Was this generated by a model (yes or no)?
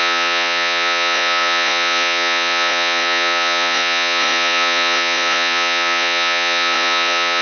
yes